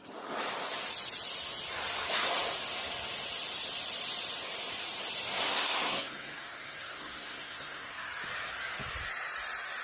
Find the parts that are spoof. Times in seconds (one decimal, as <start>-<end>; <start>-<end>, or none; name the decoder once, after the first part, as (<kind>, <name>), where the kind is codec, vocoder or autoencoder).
5.4-8.1 (codec, SNAC)